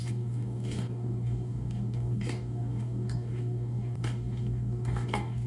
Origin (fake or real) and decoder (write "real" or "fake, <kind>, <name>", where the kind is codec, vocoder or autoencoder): fake, codec, DAC